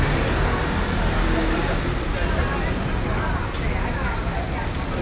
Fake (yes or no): no